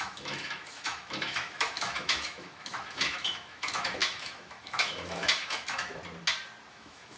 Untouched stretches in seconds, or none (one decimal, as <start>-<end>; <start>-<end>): 6.0-6.7